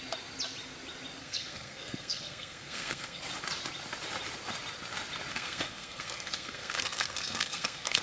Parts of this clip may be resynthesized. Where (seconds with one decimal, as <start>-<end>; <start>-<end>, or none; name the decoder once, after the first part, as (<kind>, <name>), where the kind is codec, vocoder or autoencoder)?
1.2-3.2 (codec, SNAC); 5.3-8.0